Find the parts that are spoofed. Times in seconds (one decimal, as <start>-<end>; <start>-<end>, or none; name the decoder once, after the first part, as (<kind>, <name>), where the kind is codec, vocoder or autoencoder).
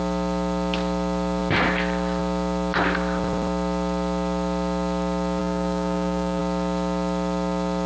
5.4-6.4 (codec, DAC)